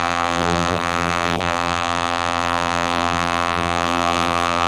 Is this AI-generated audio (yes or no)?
yes